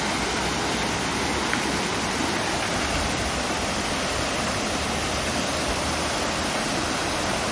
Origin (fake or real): real